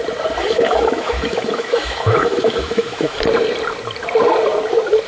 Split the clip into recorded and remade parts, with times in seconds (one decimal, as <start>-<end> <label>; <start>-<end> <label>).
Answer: 0.0-0.4 recorded; 0.4-3.2 remade; 3.2-5.1 recorded